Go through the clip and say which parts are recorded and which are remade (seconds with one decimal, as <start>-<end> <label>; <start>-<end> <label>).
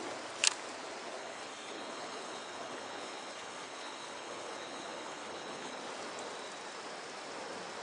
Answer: 0.0-1.2 recorded; 1.2-5.8 remade; 5.8-7.8 recorded